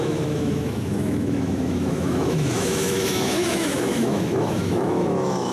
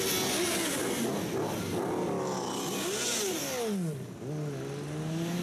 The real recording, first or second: second